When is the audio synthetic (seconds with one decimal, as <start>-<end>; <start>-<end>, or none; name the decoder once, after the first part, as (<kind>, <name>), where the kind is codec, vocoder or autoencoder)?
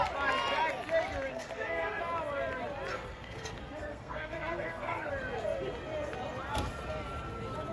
1.3-2.0 (codec, SNAC); 2.9-5.1